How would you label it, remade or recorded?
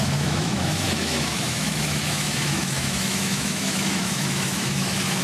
remade